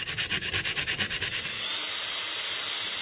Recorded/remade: recorded